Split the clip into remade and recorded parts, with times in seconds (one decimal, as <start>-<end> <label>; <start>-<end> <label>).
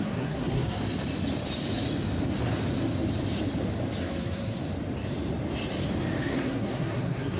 0.0-0.8 remade; 0.8-4.0 recorded; 4.0-4.6 remade; 4.6-6.2 recorded; 6.2-7.4 remade